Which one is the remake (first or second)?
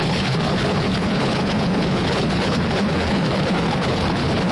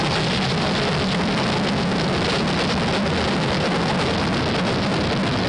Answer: first